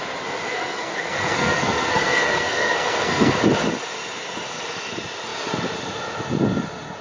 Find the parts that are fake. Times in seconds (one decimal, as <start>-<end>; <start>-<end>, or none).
0.5-3.4